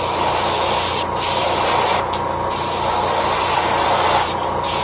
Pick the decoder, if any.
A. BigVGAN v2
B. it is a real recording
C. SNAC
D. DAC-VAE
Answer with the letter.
B